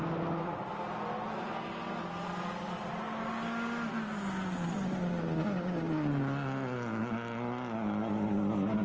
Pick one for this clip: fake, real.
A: real